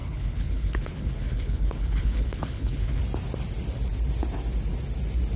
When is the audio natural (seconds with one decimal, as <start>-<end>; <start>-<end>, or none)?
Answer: 3.0-5.4